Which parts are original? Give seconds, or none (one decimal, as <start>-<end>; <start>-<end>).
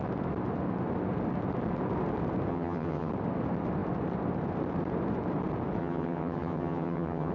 0.0-2.5; 3.1-5.8